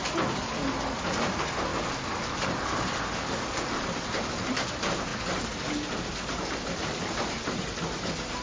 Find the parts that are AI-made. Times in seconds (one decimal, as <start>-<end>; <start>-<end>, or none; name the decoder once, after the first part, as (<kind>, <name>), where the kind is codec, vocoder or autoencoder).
1.7-2.5 (vocoder, BigVGAN v2); 5.1-7.2